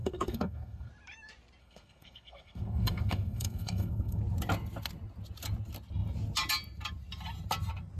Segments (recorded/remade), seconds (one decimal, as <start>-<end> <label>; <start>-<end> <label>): 0.0-0.9 remade; 0.9-1.6 recorded; 1.6-4.2 remade; 4.2-8.0 recorded